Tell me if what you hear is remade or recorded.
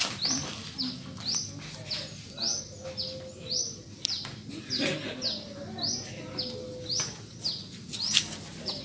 recorded